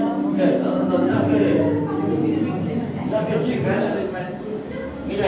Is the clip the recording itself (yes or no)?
yes